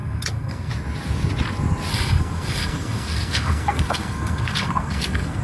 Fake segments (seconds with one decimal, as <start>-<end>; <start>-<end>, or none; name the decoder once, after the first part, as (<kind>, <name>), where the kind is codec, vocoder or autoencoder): 0.0-0.7 (codec, SNAC); 1.9-5.4